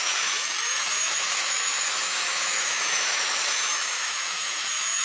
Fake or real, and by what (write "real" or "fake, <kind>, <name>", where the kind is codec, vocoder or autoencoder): fake, autoencoder, DAC-VAE